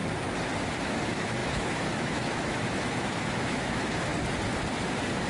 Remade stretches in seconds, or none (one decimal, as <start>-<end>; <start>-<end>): 0.8-4.1